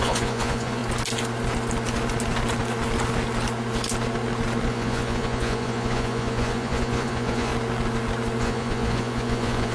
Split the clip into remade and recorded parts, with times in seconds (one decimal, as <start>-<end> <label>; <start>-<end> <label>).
0.0-0.8 remade; 0.8-4.7 recorded; 4.7-7.5 remade; 7.5-8.4 recorded; 8.4-9.7 remade